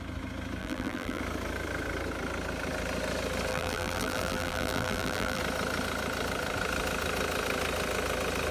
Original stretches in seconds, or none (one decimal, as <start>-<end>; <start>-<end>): 0.0-0.6; 1.2-3.5; 5.4-8.5